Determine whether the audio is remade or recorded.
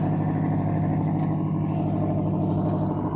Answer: recorded